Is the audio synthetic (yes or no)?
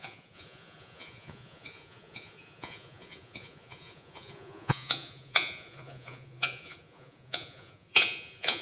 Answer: yes